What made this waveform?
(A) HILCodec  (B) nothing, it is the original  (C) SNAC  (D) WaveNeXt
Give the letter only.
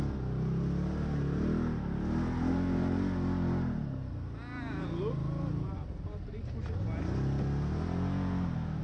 B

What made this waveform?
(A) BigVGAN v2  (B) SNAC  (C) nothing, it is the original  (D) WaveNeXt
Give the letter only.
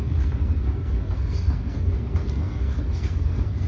B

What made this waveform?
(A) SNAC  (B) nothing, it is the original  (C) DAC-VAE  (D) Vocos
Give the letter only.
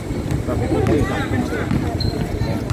B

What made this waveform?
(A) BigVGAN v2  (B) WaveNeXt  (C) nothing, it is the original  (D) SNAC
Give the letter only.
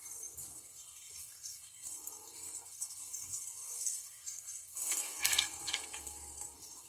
D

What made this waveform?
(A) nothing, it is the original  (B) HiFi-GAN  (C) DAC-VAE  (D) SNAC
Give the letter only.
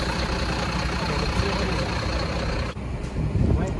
A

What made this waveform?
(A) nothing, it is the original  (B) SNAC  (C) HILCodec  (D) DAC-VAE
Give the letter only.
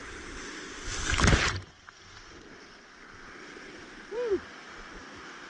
A